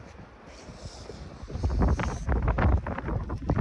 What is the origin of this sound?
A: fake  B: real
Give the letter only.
B